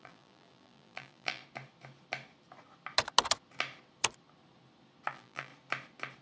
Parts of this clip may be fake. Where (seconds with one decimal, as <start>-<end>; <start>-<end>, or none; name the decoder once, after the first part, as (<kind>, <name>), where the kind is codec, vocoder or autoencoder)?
0.0-1.4 (vocoder, BigVGAN v2); 5.1-5.5